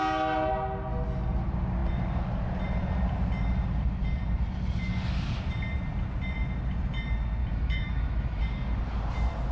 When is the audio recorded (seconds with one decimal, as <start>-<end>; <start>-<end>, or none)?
0.0-7.4; 8.4-9.5